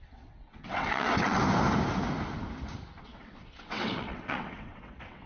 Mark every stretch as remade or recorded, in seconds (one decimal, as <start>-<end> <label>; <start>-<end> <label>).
0.0-1.4 remade; 1.4-3.0 recorded; 3.0-5.3 remade